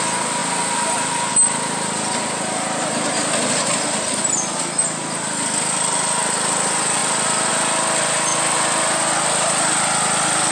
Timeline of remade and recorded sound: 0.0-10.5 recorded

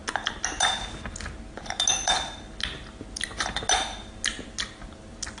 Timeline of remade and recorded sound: 0.0-5.4 recorded